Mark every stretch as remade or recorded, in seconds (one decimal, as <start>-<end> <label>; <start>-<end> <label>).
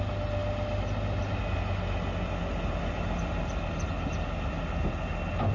0.0-5.5 recorded